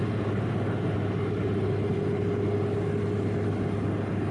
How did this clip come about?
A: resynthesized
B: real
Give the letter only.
B